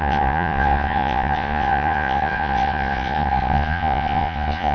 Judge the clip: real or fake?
fake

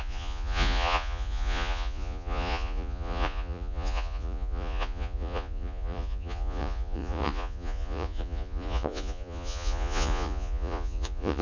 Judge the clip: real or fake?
fake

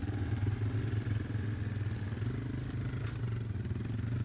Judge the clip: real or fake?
real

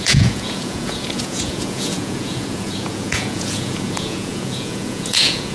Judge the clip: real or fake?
fake